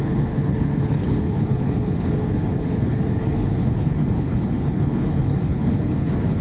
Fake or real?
fake